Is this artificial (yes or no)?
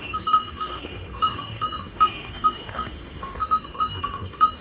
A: yes